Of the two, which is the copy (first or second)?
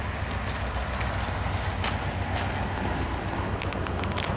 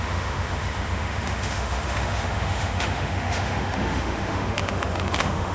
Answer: second